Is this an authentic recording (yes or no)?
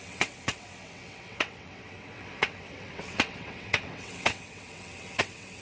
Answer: no